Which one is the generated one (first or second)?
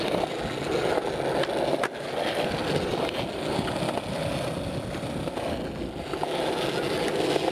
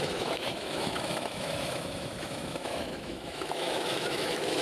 second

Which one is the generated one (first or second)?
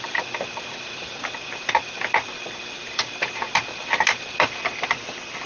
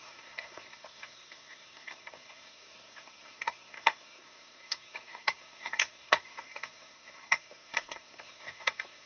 second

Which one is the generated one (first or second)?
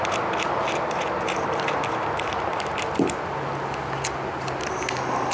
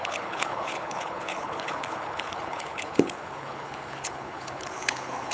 second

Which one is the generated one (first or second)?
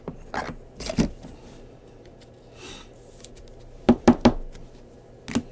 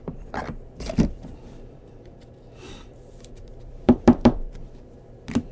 second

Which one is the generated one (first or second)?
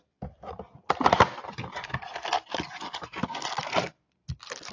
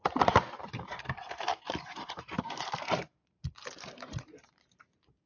second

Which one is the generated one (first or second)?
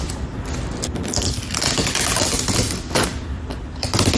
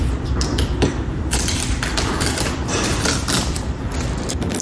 second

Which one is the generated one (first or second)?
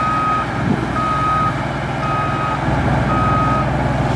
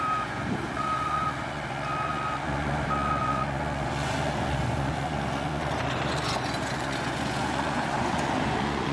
second